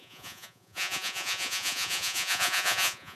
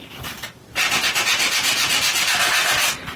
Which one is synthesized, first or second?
first